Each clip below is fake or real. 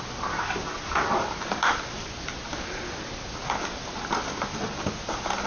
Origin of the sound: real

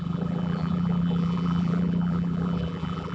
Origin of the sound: fake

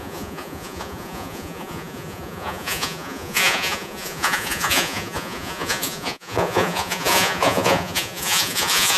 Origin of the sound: fake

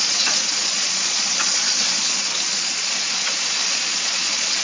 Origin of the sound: fake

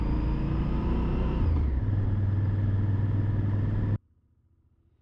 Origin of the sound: real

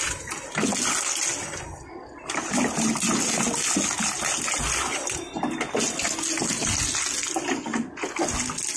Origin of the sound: real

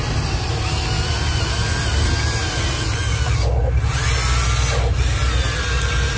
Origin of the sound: real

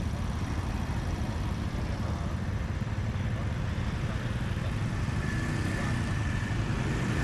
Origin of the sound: real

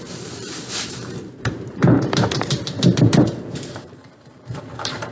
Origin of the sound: fake